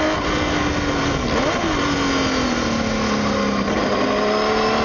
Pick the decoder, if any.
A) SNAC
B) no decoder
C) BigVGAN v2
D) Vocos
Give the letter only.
B